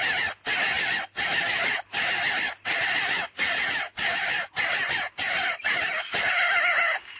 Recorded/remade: recorded